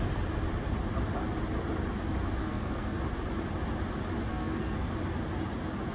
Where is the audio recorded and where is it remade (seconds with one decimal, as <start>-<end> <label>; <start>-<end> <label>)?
0.0-2.4 recorded; 2.4-3.0 remade; 3.0-4.3 recorded; 4.3-4.9 remade; 4.9-5.9 recorded